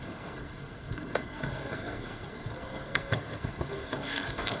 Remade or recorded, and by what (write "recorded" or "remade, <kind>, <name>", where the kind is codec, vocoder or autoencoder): remade, codec, SNAC